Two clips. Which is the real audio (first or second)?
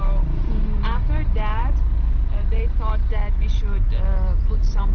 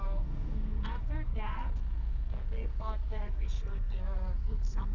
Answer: first